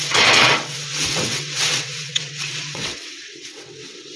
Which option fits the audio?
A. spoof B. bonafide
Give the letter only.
A